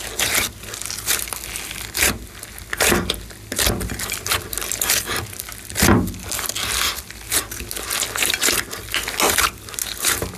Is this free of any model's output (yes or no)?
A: yes